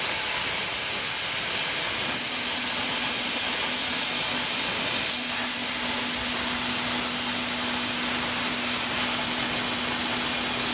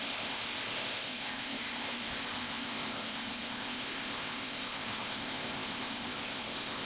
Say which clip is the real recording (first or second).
first